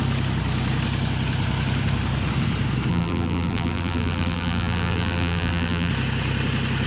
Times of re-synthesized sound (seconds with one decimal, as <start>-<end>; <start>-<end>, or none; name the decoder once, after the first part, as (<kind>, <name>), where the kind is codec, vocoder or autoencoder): 2.9-5.9 (vocoder, BigVGAN v2)